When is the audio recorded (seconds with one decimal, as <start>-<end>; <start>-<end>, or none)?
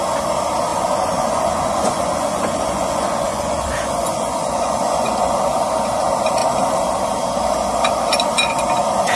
0.0-0.7; 5.3-9.2